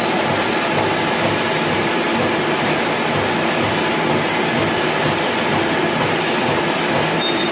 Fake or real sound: real